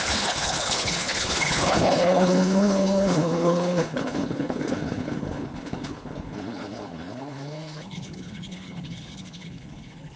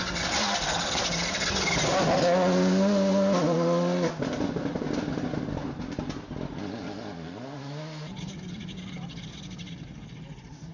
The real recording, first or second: second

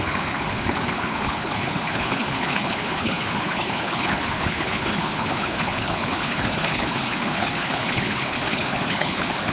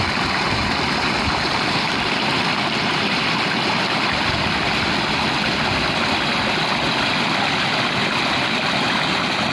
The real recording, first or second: second